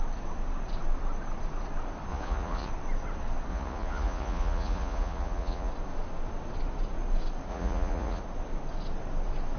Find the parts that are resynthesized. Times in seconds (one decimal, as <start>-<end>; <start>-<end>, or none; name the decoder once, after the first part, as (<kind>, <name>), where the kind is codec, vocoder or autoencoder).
2.1-2.7 (vocoder, Vocos); 3.5-5.7; 7.5-8.2